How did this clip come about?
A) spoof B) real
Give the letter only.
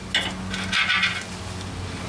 B